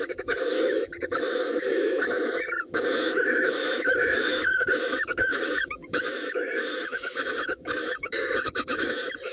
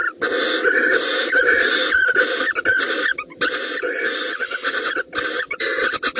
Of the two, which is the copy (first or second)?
first